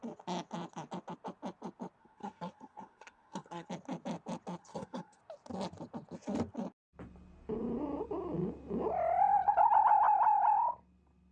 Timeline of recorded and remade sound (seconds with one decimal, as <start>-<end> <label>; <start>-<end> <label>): 0.0-2.0 recorded; 2.0-3.7 remade; 3.7-4.6 recorded; 4.6-5.2 remade; 5.2-11.3 recorded